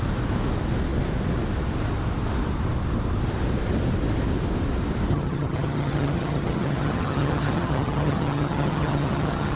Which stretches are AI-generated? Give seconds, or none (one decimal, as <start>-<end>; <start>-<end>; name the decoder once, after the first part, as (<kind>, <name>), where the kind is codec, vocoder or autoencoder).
5.1-9.6 (vocoder, HiFi-GAN)